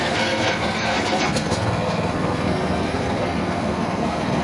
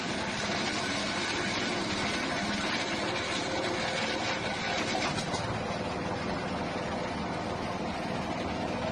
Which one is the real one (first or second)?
second